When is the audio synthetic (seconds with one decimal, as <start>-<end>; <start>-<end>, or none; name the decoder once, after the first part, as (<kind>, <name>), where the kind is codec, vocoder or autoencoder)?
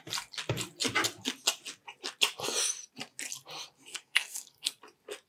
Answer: 3.9-4.8 (codec, SNAC)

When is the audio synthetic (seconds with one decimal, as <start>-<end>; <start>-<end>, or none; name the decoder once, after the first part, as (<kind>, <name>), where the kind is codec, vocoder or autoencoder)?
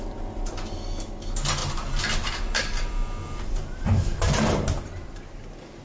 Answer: 1.6-5.1 (vocoder, BigVGAN v2)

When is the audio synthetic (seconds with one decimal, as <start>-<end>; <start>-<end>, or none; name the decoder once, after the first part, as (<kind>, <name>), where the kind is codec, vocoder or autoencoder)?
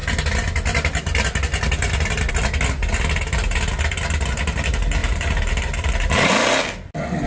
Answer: 5.0-6.3 (vocoder, BigVGAN v2)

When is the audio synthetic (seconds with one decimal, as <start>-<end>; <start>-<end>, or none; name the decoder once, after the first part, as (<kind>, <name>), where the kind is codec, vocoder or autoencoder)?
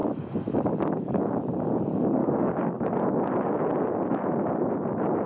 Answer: 0.0-1.2 (codec, DAC); 2.2-2.9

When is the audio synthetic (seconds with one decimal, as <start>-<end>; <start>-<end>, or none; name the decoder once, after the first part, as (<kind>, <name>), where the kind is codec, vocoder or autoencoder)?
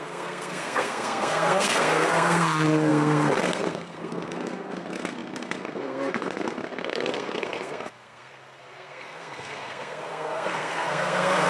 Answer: 0.0-11.5 (codec, SNAC)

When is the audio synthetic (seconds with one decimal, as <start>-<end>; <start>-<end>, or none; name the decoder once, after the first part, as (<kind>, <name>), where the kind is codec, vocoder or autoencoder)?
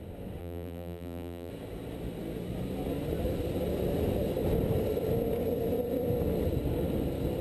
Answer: 0.4-1.5 (vocoder, BigVGAN v2)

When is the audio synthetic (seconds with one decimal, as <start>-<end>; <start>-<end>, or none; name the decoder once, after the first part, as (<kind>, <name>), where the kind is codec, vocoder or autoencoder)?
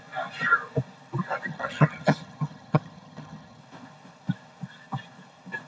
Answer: 1.5-3.6 (vocoder, HiFi-GAN)